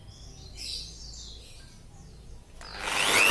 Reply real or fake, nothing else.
real